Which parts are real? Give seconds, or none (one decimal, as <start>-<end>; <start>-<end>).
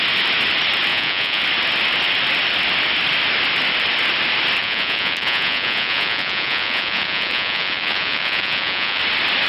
0.0-0.9; 1.4-4.6; 9.0-9.5